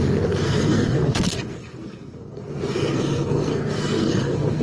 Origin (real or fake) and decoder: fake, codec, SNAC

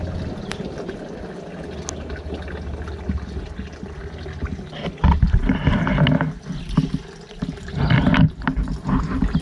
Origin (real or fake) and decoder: real